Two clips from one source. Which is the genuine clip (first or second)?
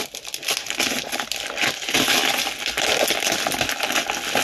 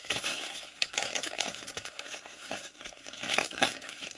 first